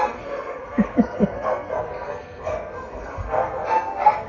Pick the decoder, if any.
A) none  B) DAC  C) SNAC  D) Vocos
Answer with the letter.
C